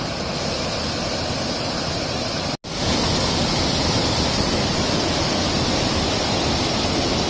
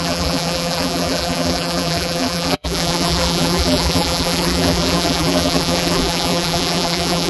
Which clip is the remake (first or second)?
second